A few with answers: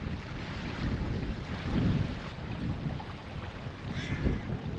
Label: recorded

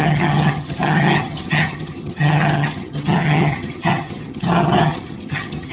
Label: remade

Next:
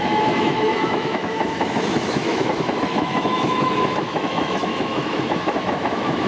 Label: remade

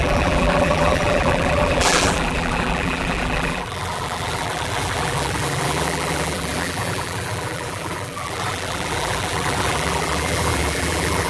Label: remade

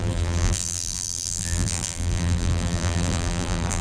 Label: remade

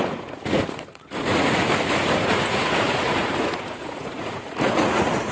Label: remade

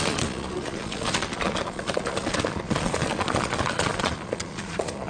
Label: remade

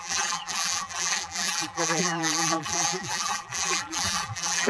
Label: remade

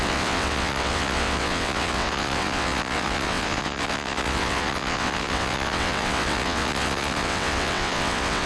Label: remade